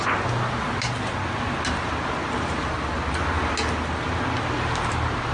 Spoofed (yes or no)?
no